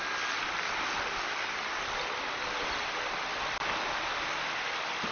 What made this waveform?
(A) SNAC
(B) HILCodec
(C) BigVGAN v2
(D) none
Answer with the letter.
D